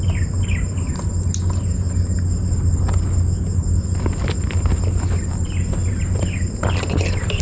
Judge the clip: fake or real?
real